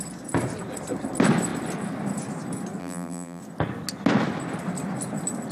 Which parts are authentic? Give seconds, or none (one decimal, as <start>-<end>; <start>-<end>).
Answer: 0.0-2.8; 3.4-5.5